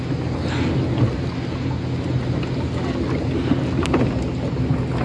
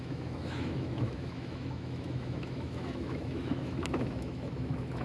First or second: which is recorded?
first